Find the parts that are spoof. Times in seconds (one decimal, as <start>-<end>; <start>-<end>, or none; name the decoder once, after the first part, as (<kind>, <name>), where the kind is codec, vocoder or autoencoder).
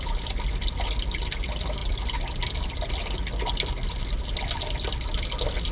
none